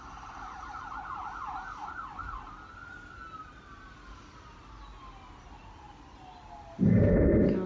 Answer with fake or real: real